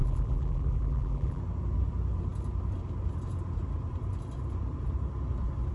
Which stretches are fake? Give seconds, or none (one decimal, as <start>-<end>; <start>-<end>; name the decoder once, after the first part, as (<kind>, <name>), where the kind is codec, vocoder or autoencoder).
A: 0.0-1.4 (vocoder, BigVGAN v2)